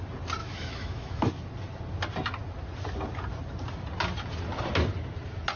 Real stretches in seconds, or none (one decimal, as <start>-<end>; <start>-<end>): 0.0-0.4; 1.3-5.6